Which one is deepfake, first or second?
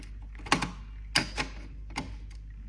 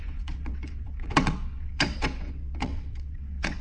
second